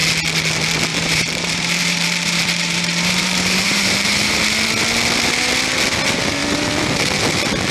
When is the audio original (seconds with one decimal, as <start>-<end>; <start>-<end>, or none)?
0.0-0.9; 4.4-7.7